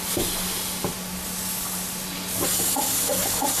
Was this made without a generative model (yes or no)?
yes